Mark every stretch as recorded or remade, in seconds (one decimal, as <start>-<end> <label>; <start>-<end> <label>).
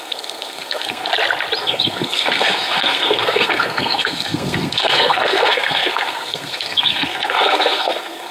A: 0.0-1.1 remade; 1.1-1.6 recorded; 1.6-8.3 remade